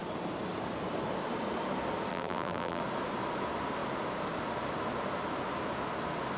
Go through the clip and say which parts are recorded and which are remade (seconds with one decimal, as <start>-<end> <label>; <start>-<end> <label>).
0.0-2.1 recorded; 2.1-2.8 remade; 2.8-6.4 recorded